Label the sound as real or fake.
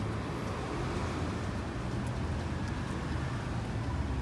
real